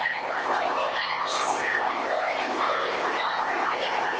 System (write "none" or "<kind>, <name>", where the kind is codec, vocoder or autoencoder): codec, ZipCodec